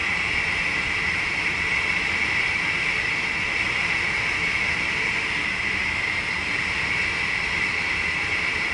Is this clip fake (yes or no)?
no